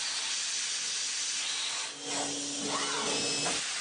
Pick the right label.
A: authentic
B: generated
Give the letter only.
A